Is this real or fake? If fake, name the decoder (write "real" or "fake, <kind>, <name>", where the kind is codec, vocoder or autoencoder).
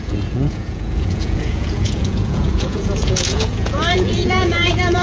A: fake, vocoder, Vocos